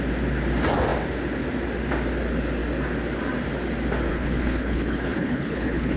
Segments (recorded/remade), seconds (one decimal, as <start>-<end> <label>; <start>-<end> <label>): 0.0-4.1 recorded; 4.1-6.0 remade